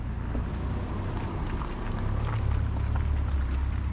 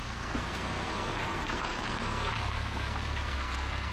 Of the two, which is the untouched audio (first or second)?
first